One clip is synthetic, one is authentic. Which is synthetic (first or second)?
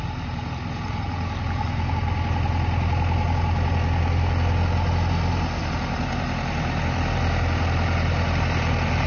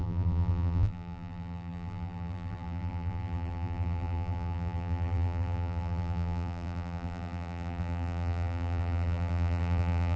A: second